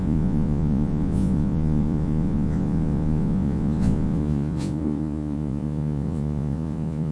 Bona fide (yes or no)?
no